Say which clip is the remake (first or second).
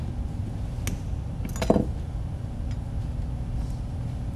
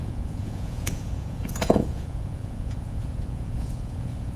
second